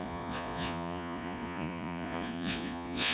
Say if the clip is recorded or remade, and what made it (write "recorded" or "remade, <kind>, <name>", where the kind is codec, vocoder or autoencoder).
remade, vocoder, Vocos